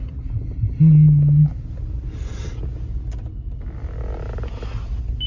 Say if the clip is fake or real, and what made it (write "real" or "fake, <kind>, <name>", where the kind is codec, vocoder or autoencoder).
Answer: real